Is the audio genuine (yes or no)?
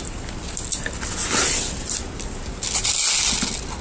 yes